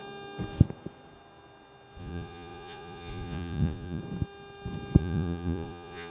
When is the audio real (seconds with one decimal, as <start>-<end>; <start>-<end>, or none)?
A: 0.0-2.0; 4.0-5.0